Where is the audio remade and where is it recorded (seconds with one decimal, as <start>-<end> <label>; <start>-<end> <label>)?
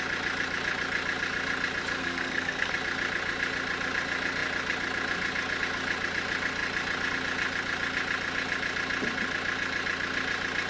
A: 0.0-2.0 recorded; 2.0-2.7 remade; 2.7-10.7 recorded